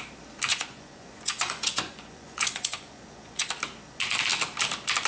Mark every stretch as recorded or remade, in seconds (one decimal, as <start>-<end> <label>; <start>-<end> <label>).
0.0-0.5 recorded; 0.5-3.5 remade; 3.5-5.1 recorded